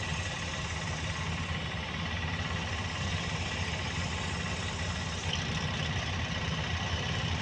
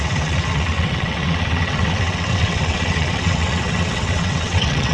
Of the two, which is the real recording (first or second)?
first